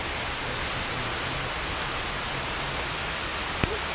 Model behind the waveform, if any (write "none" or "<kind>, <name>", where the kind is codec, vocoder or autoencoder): none